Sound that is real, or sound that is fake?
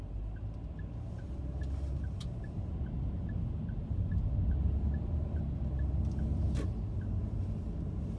real